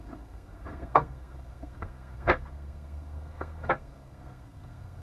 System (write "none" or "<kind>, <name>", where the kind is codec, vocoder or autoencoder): codec, SNAC